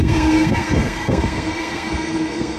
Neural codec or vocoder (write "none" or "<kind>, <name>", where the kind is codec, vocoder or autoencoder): codec, SNAC